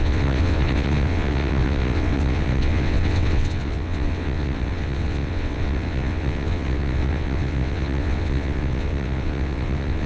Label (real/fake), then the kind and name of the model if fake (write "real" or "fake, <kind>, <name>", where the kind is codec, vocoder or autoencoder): fake, vocoder, WaveNeXt